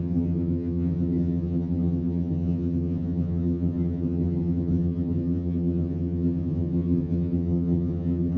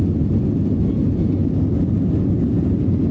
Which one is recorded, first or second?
second